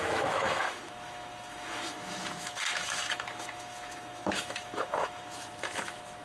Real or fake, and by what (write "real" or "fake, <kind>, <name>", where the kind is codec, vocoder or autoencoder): fake, autoencoder, DAC-VAE